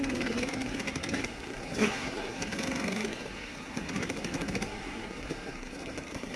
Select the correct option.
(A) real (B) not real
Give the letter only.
B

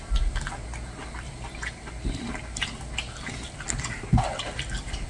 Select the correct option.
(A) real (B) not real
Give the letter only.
A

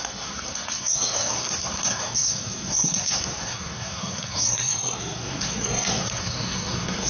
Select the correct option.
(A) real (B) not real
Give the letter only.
B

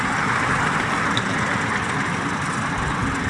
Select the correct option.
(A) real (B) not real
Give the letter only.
A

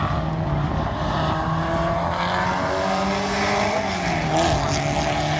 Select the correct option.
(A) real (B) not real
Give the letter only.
A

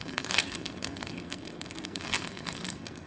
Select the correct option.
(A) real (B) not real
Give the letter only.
B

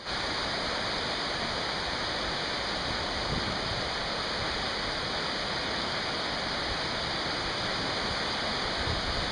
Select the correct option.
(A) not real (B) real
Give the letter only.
B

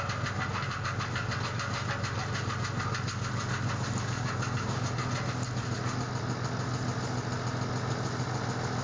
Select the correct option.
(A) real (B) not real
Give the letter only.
A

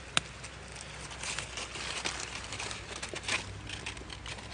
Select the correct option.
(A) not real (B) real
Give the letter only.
B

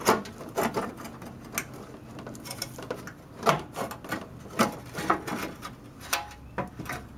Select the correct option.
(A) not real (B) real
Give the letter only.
B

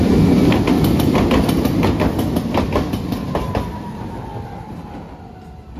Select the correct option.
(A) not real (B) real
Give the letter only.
B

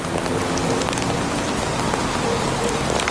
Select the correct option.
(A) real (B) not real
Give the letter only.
A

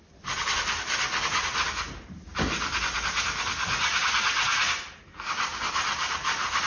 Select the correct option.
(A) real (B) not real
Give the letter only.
A